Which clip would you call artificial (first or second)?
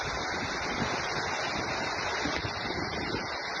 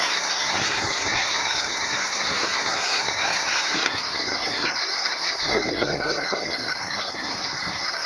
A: second